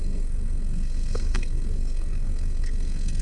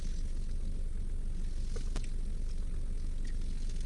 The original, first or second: second